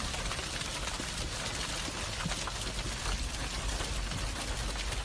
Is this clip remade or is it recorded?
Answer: recorded